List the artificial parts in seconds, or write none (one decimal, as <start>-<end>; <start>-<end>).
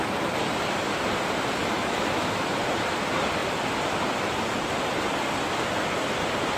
1.6-2.5